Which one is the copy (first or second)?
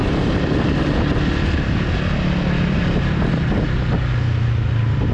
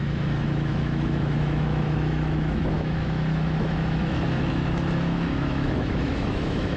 second